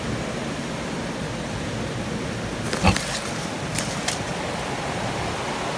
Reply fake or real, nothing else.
real